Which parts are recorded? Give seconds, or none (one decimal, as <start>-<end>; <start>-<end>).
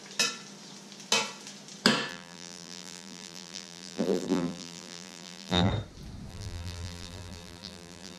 0.0-2.1; 5.7-6.3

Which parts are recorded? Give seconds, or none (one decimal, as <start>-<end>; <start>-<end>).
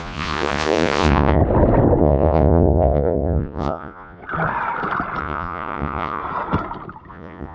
1.4-2.0; 4.2-5.2; 6.2-7.1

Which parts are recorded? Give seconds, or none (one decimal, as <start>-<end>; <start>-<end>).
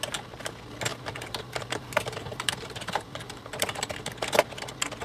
0.0-0.9; 3.9-5.0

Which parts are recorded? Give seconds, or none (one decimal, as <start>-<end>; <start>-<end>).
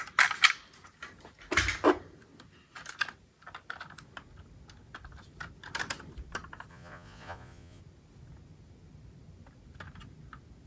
0.0-6.7; 7.8-10.7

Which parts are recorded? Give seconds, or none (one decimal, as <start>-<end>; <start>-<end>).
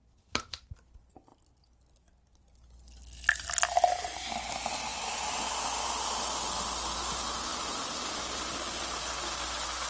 0.0-4.9; 5.5-7.5; 8.5-9.9